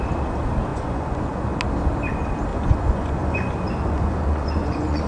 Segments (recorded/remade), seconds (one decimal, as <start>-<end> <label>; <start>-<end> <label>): 0.0-0.7 recorded; 0.7-1.4 remade; 1.4-2.5 recorded; 2.5-5.1 remade